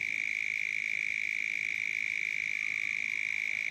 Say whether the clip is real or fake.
real